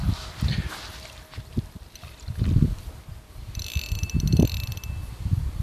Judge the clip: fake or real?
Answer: real